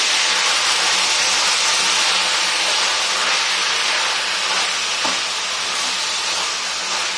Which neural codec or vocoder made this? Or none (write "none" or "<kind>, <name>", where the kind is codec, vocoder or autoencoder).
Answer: none